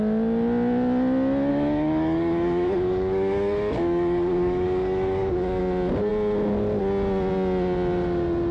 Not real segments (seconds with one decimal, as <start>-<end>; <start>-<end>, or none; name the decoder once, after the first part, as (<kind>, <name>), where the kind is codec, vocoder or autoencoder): 1.5-5.6 (codec, DAC)